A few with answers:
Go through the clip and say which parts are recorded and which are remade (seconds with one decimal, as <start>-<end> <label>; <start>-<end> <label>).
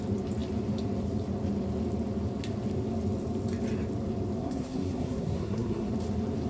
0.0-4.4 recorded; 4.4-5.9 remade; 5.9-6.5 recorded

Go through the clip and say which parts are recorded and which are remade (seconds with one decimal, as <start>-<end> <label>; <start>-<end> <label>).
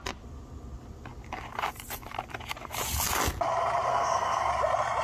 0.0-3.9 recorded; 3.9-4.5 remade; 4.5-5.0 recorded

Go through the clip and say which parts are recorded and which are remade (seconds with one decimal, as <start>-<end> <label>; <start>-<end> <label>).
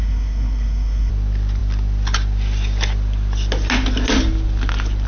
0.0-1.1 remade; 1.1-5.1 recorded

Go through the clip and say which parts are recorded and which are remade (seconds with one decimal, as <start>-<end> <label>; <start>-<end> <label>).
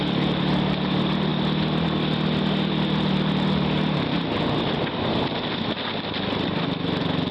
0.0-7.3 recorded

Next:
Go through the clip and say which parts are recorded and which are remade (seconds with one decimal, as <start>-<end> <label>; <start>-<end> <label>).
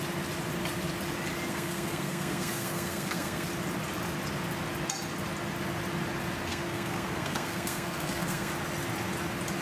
0.0-1.5 recorded; 1.5-3.5 remade; 3.5-6.5 recorded; 6.5-8.5 remade; 8.5-9.6 recorded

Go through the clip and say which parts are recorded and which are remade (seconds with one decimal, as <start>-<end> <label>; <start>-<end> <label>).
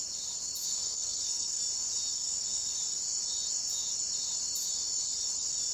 0.0-0.7 recorded; 0.7-1.6 remade; 1.6-2.1 recorded; 2.1-2.7 remade; 2.7-5.7 recorded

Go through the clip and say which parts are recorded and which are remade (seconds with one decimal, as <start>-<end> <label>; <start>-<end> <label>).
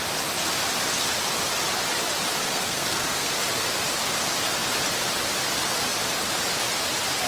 0.0-2.4 recorded; 2.4-3.3 remade; 3.3-7.3 recorded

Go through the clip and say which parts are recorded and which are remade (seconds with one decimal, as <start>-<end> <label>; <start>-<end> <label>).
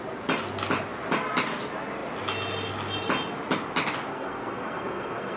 0.0-4.1 recorded; 4.1-5.4 remade